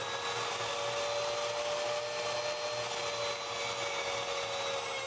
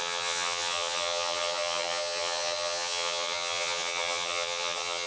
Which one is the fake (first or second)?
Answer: second